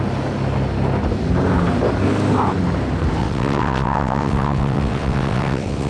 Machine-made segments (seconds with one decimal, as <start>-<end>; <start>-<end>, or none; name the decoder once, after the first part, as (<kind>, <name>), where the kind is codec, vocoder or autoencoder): 3.2-5.9 (vocoder, WaveNeXt)